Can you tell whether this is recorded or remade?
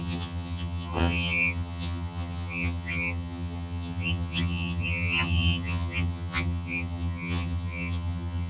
remade